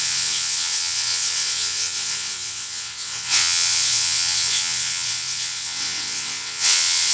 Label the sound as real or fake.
fake